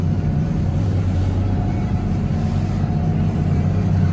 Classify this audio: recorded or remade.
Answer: remade